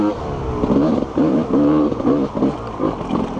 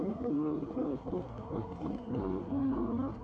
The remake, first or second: second